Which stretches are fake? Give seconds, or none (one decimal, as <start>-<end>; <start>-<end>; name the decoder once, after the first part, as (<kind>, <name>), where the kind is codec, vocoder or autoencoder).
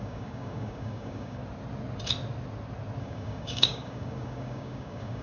0.0-1.4 (codec, DAC); 3.0-5.2